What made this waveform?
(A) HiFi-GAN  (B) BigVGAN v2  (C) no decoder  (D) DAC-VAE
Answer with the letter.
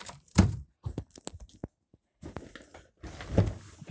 C